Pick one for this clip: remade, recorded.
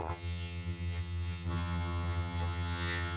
remade